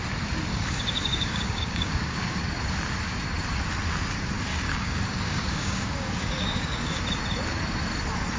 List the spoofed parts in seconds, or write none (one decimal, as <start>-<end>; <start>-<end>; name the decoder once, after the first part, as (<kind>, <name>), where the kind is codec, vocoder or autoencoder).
0.5-2.4 (codec, DAC); 4.5-7.0